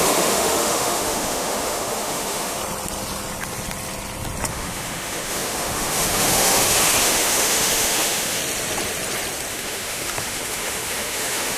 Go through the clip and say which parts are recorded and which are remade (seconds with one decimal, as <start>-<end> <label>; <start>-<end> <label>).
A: 0.0-2.6 remade; 2.6-4.5 recorded; 4.5-8.4 remade; 8.4-9.5 recorded; 9.5-11.6 remade